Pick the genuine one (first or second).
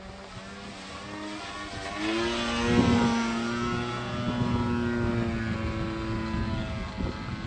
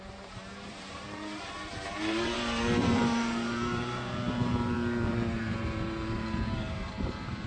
first